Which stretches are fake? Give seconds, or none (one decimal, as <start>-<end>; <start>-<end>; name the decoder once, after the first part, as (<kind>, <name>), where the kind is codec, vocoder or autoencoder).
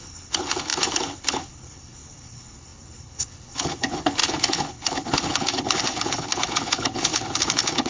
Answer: 0.0-7.9 (codec, HILCodec)